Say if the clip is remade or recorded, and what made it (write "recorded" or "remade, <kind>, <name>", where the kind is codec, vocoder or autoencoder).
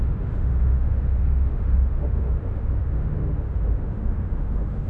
remade, autoencoder, DAC-VAE